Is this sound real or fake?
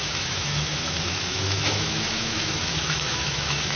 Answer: fake